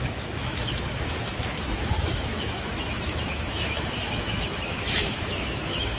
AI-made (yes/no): yes